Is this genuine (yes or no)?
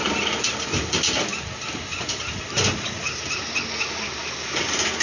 yes